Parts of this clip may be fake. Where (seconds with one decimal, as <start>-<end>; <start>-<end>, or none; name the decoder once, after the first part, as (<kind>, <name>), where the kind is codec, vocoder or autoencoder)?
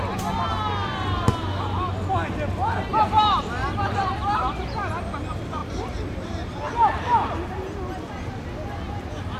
2.9-3.5 (vocoder, BigVGAN v2); 5.6-6.6